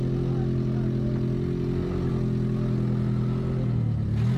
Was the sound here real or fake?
real